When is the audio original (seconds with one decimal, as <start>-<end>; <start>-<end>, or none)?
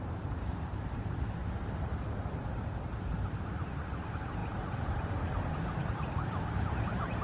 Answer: 1.4-2.8